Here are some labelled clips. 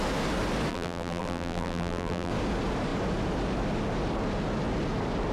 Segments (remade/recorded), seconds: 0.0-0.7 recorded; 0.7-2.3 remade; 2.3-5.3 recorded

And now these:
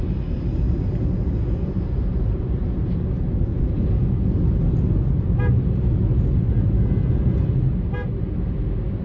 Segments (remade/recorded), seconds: 0.0-3.5 recorded; 3.5-4.1 remade; 4.1-9.0 recorded